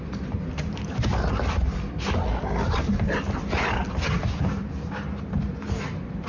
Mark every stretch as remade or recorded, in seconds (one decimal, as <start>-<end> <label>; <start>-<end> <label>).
0.0-1.1 remade; 1.1-4.4 recorded; 4.4-6.3 remade